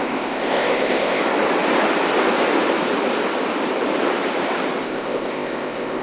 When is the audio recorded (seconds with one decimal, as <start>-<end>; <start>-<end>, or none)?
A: 1.2-4.8